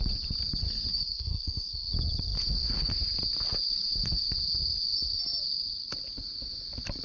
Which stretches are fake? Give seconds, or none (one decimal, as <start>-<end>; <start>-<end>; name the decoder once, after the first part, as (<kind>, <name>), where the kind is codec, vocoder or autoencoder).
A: 0.9-1.9 (codec, SNAC)